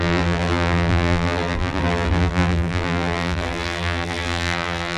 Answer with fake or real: fake